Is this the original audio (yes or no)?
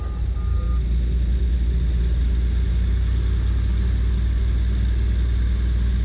yes